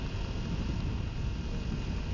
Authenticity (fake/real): real